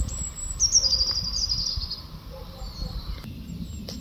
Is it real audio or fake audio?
real